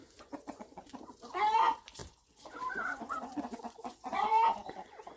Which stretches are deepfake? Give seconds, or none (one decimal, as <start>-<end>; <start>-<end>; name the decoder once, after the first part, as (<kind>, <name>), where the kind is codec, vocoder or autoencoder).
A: 0.0-5.2 (vocoder, Vocos)